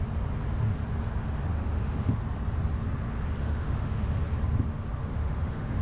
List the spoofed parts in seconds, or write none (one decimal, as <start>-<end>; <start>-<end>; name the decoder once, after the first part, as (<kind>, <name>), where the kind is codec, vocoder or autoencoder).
1.5-2.2 (autoencoder, DAC-VAE); 3.4-4.2; 5.0-5.8